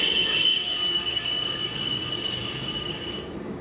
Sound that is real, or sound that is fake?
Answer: fake